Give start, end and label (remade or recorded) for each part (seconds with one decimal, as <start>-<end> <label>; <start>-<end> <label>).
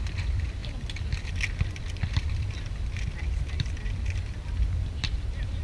0.0-5.6 remade